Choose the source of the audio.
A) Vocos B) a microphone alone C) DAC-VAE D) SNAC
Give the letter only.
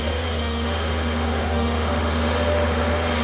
C